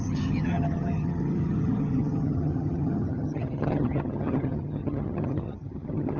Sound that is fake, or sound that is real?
fake